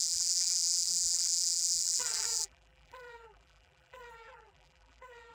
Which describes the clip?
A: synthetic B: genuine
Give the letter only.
A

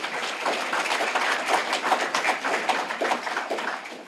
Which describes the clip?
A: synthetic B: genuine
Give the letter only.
B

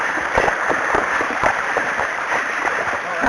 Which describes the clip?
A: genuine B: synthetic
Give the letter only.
B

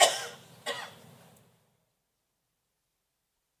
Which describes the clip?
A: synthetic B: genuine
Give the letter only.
B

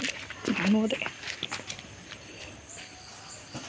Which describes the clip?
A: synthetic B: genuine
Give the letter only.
B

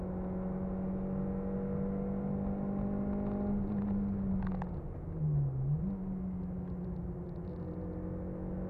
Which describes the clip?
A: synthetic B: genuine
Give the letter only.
B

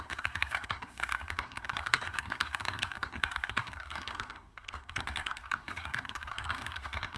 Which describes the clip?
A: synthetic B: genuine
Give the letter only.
A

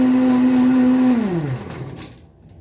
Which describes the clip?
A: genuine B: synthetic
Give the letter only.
A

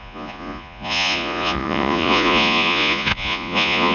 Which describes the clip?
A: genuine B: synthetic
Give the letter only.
B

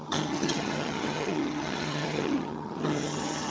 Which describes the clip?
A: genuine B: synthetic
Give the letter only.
B